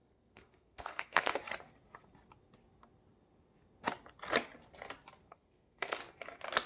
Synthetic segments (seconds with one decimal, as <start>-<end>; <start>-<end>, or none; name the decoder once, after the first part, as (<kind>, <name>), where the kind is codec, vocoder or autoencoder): 0.0-1.3 (codec, SNAC); 5.3-6.0